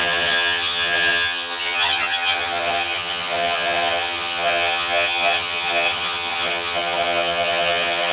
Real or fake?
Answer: fake